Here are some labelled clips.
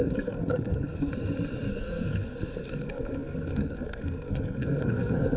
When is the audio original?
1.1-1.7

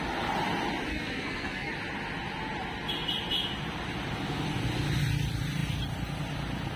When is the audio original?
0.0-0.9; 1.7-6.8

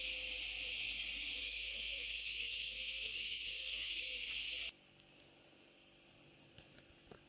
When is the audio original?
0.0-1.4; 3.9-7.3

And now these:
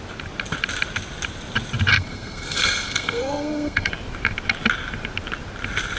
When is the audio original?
0.0-1.9; 3.9-6.0

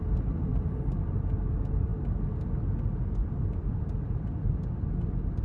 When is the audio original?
0.0-5.4

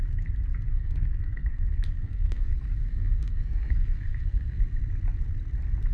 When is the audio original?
0.0-0.7; 2.5-2.9; 4.6-5.9

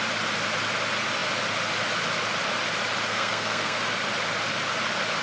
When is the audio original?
0.0-3.1; 3.8-5.2

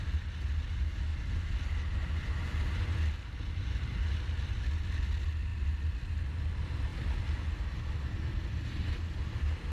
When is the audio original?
0.0-9.7